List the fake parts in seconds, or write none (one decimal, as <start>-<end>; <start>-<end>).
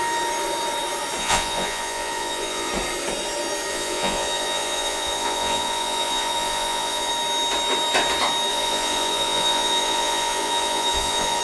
1.2-2.7; 3.7-7.1; 8.5-11.4